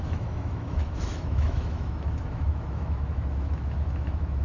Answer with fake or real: fake